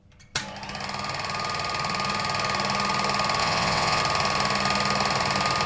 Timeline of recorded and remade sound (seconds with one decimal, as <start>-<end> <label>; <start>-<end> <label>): 0.0-3.4 recorded; 3.4-4.0 remade; 4.0-5.7 recorded